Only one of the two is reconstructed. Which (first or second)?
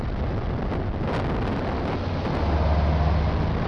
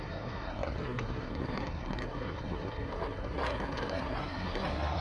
second